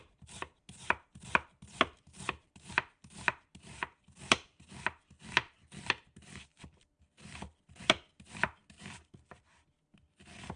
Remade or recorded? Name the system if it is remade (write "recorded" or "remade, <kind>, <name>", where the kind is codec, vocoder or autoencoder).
recorded